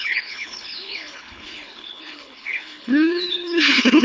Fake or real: fake